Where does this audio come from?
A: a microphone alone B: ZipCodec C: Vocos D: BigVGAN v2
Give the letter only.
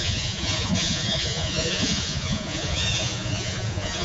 C